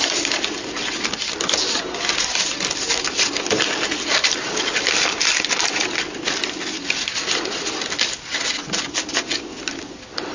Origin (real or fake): real